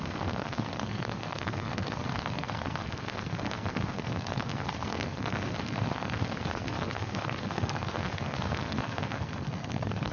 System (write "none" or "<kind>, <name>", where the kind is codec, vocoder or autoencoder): codec, SNAC